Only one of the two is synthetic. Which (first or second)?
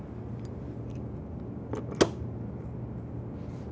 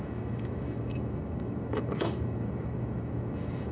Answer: second